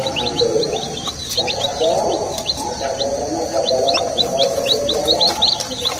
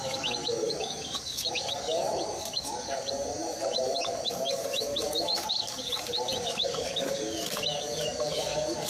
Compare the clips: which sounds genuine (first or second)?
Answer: first